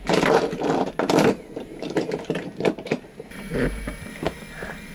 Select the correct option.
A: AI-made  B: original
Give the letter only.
A